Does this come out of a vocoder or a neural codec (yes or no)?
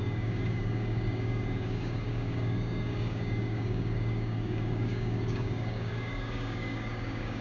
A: yes